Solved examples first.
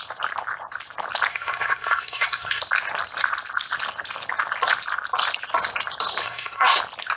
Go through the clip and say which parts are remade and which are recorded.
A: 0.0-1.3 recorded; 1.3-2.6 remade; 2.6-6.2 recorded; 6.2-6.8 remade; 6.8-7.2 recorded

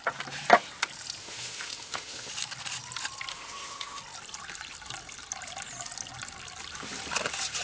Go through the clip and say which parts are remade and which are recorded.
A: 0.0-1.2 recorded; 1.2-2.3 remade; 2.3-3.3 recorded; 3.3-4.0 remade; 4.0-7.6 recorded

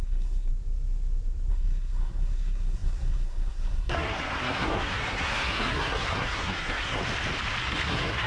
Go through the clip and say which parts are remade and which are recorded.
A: 0.0-0.5 remade; 0.5-1.5 recorded; 1.5-7.0 remade; 7.0-7.6 recorded; 7.6-8.3 remade